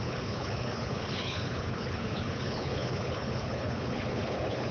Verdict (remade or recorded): remade